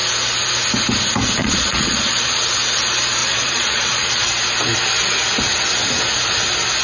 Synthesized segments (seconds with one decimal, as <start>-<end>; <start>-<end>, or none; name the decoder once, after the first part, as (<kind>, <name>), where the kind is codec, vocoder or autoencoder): 1.4-2.4 (vocoder, Vocos); 3.2-4.3